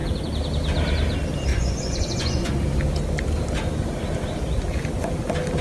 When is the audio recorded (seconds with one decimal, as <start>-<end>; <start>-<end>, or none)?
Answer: 0.0-1.5; 2.5-5.6